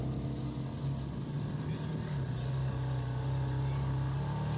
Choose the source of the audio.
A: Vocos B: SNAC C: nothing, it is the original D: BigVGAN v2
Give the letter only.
C